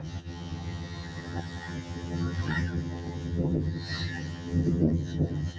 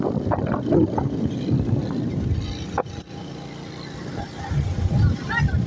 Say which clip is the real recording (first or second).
second